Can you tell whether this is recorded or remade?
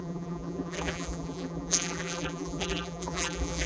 remade